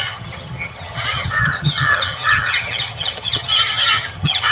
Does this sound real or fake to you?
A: fake